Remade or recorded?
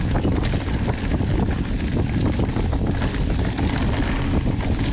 recorded